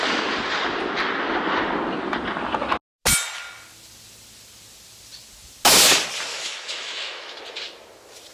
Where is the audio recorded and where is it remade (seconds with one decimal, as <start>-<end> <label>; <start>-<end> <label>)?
0.0-6.3 recorded; 6.3-7.4 remade; 7.4-8.3 recorded